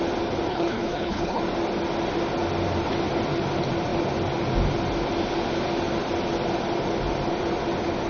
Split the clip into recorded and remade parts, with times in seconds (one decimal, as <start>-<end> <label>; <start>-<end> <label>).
0.0-0.5 recorded; 0.5-1.4 remade; 1.4-8.1 recorded

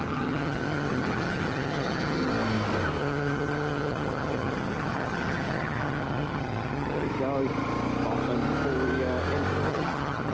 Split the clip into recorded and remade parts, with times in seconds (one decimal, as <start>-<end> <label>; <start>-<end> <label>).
0.0-2.3 remade; 2.3-3.0 recorded; 3.0-7.1 remade; 7.1-9.7 recorded; 9.7-10.3 remade

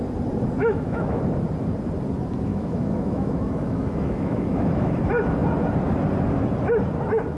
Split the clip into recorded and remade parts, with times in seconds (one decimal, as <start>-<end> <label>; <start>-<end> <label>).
0.0-0.6 recorded; 0.6-1.2 remade; 1.2-2.5 recorded; 2.5-5.0 remade; 5.0-7.4 recorded

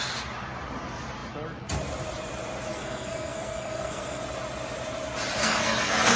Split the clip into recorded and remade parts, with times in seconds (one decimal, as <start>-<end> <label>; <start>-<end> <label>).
0.0-2.7 recorded; 2.7-4.2 remade; 4.2-5.4 recorded; 5.4-6.2 remade

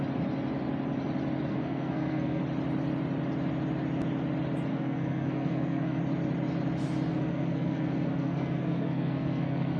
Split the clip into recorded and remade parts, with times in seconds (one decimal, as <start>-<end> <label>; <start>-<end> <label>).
0.0-1.5 recorded; 1.5-2.4 remade; 2.4-4.7 recorded; 4.7-6.0 remade; 6.0-7.1 recorded; 7.1-9.8 remade

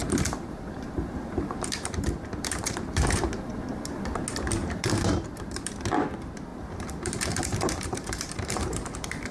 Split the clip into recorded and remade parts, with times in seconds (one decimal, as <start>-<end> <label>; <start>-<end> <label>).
0.0-3.5 remade; 3.5-4.6 recorded; 4.6-5.7 remade; 5.7-6.5 recorded; 6.5-9.3 remade

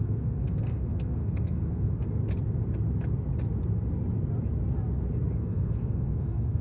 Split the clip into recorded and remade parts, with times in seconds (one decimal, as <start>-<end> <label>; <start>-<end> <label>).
0.0-2.2 remade; 2.2-5.3 recorded; 5.3-6.6 remade

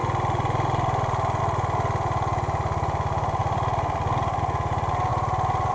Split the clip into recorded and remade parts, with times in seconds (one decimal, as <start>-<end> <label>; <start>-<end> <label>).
0.0-5.7 recorded